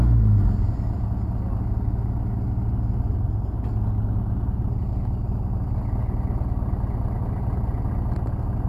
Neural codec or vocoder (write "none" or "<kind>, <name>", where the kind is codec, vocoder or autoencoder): none